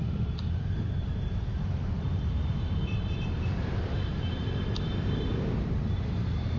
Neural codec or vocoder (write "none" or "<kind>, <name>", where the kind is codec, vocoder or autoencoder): vocoder, BigVGAN v2